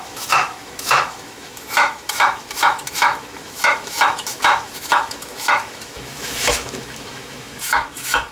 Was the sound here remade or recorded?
remade